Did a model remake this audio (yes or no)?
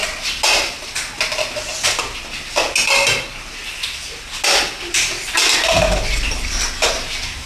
no